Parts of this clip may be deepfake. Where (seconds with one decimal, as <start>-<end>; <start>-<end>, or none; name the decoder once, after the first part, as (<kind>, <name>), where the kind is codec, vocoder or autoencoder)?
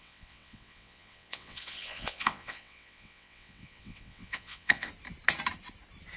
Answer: 0.0-4.9 (vocoder, WaveNeXt)